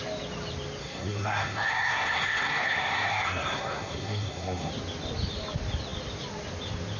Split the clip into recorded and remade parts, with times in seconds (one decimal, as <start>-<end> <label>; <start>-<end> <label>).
0.0-0.8 recorded; 0.8-4.7 remade; 4.7-7.0 recorded